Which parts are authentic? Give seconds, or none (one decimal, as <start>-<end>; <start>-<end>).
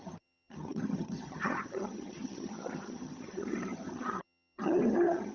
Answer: none